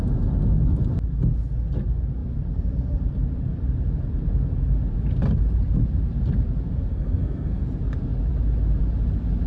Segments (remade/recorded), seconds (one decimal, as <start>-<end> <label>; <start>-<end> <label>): 0.0-6.9 recorded; 6.9-7.6 remade; 7.6-9.5 recorded